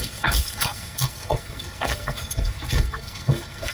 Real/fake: fake